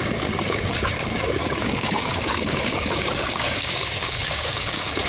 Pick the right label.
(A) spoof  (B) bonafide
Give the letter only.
A